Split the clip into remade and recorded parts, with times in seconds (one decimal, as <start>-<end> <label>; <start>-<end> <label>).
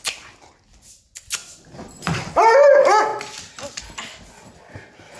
0.0-5.2 recorded